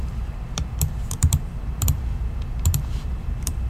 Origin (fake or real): fake